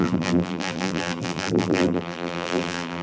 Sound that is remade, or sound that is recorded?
remade